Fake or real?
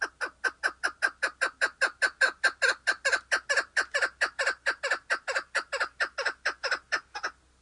real